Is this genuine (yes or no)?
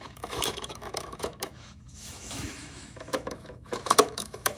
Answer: no